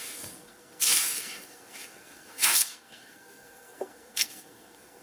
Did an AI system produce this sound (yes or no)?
yes